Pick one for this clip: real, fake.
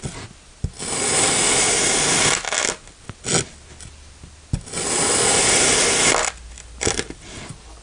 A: real